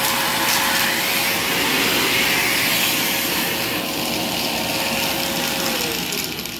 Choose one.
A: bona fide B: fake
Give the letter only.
A